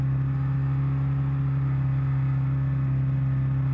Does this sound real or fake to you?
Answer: real